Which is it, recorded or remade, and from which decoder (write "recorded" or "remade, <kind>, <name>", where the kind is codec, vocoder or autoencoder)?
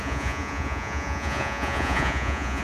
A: remade, vocoder, Vocos